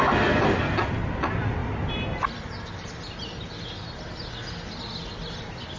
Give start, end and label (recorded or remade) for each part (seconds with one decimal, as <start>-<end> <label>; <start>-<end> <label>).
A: 0.0-1.6 recorded; 1.6-2.2 remade; 2.2-5.8 recorded